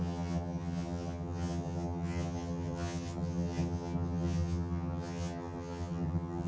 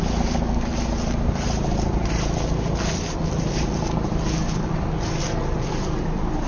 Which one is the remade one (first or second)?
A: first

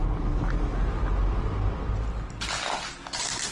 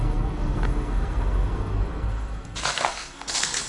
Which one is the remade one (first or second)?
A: second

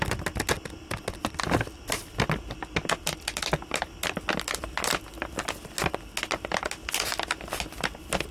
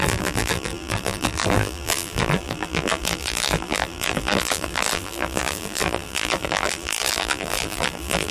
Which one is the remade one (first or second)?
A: second